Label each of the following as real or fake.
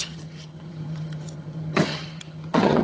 fake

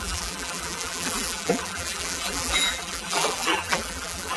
fake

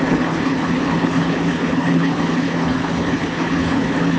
fake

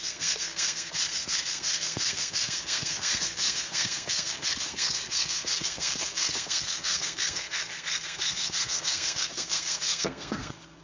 fake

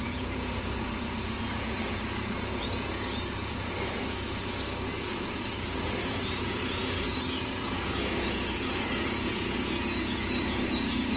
fake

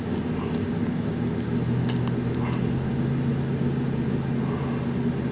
real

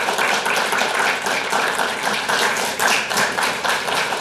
fake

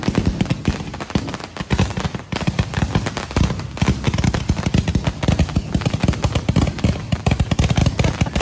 real